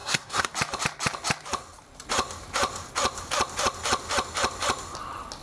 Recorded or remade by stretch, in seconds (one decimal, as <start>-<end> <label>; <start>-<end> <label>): 0.0-0.5 remade; 0.5-5.4 recorded